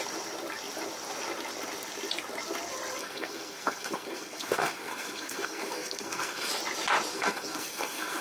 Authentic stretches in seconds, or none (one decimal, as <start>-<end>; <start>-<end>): 0.0-3.0; 6.5-7.1